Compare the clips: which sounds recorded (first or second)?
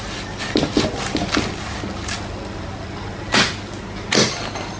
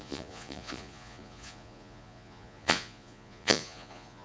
first